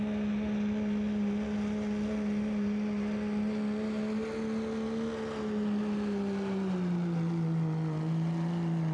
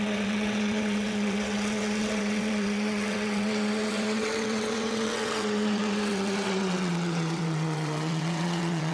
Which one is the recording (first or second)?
first